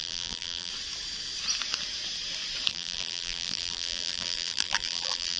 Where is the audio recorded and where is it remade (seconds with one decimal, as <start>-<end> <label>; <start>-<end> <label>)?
0.0-0.7 remade; 0.7-2.7 recorded; 2.7-5.4 remade